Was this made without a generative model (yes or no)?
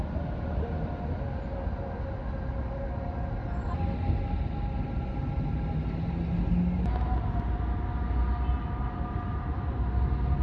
yes